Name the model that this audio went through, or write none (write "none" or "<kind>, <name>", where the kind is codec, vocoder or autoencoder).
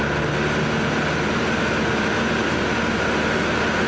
none